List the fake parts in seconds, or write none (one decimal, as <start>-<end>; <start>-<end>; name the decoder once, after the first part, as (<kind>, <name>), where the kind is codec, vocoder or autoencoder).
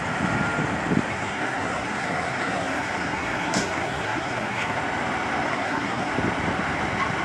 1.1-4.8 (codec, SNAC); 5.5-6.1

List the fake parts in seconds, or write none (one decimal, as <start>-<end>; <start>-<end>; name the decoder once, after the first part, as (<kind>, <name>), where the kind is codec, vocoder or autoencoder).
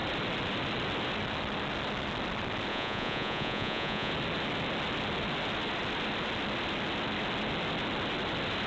2.7-4.1 (vocoder, Vocos)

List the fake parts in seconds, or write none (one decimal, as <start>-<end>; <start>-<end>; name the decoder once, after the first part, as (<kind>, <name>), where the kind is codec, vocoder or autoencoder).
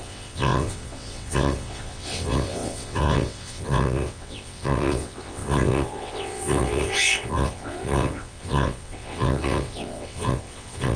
0.0-11.0 (vocoder, WaveNeXt)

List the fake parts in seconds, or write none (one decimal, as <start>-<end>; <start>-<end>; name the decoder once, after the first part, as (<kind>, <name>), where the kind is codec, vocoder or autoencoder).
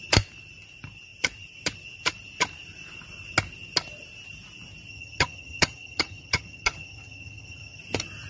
4.9-7.8 (vocoder, HiFi-GAN)